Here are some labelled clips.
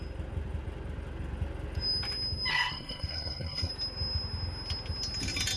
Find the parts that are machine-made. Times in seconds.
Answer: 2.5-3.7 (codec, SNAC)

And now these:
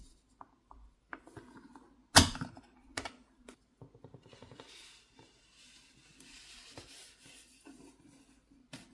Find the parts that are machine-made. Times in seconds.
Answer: none